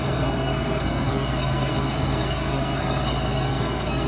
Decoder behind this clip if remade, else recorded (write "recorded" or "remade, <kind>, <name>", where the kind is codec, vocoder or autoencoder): remade, codec, SNAC